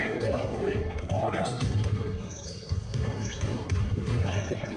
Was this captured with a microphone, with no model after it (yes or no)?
no